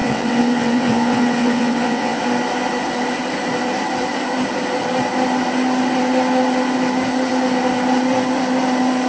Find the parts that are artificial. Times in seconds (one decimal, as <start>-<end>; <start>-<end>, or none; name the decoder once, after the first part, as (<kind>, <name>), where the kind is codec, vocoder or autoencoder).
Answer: 0.0-2.2 (vocoder, WaveNeXt)